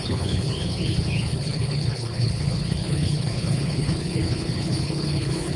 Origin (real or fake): fake